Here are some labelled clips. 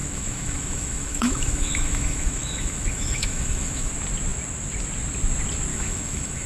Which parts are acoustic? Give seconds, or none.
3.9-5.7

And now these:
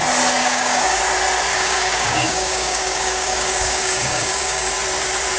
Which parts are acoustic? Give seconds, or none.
0.0-0.4; 1.0-1.5; 4.7-5.4

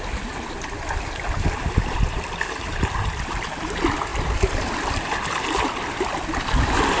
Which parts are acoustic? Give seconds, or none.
0.0-7.0